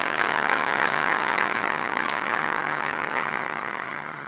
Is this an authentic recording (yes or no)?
no